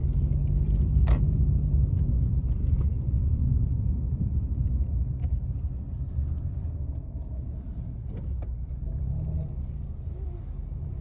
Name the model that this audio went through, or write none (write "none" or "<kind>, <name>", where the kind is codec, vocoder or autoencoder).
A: none